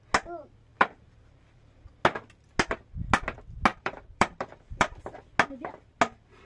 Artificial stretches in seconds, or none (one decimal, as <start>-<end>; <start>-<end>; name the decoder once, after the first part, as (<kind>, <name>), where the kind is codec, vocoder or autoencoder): 0.7-1.9 (vocoder, BigVGAN v2); 3.7-5.0